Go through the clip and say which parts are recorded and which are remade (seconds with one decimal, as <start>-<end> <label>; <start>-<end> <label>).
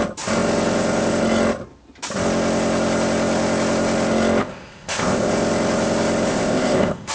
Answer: 0.0-4.4 recorded; 4.4-5.3 remade; 5.3-6.3 recorded; 6.3-7.1 remade